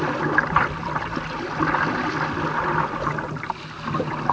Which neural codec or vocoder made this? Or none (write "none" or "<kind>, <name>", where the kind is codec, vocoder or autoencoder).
none